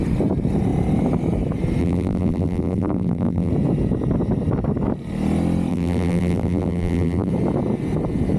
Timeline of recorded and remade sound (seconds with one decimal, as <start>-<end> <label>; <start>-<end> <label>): 0.0-1.8 recorded; 1.8-3.5 remade; 3.5-5.7 recorded; 5.7-7.3 remade; 7.3-8.4 recorded